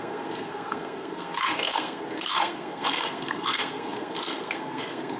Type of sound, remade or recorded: remade